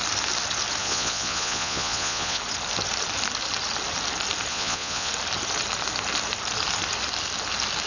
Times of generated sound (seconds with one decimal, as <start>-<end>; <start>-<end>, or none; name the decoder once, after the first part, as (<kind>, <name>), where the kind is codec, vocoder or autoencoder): 0.8-2.4 (vocoder, Vocos); 4.5-5.1